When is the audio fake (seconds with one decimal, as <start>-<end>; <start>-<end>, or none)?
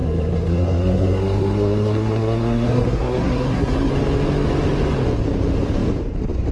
0.0-3.9